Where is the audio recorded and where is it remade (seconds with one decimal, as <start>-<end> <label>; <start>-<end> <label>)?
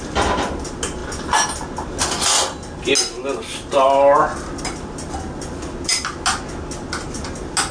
0.0-7.7 recorded